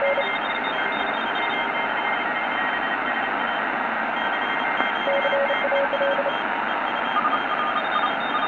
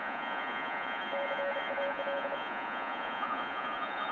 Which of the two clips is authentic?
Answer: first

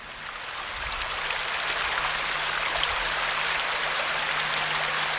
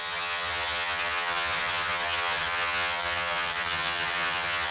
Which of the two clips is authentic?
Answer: first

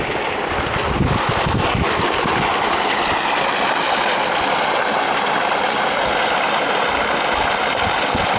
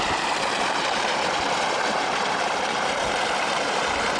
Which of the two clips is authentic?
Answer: first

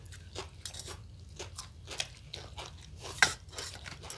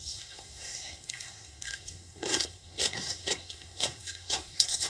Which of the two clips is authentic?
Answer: first